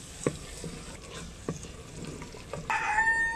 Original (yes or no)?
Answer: yes